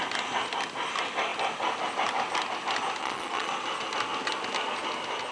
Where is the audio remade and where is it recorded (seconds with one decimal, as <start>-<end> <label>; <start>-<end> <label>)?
0.0-3.0 recorded; 3.0-3.5 remade; 3.5-5.3 recorded